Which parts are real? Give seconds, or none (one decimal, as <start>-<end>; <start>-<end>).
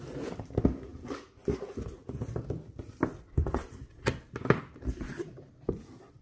0.0-6.2